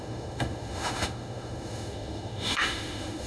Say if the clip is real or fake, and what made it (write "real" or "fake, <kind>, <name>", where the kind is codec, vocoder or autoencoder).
fake, autoencoder, DAC-VAE